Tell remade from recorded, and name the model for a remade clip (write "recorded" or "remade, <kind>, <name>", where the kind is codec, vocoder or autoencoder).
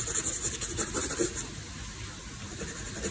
recorded